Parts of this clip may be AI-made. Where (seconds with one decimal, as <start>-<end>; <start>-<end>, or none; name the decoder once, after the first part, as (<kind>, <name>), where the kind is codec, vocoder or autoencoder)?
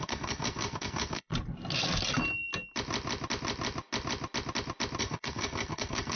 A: 0.0-1.3 (codec, SNAC); 5.0-6.2